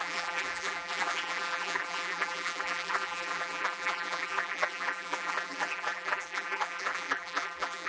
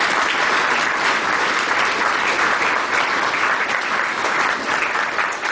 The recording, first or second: second